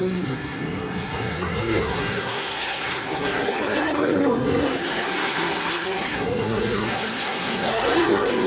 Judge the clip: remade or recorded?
remade